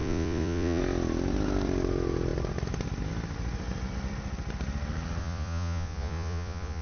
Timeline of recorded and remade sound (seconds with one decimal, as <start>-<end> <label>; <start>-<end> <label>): 0.0-0.8 remade; 0.8-5.2 recorded; 5.2-6.8 remade